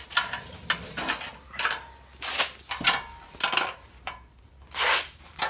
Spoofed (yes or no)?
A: no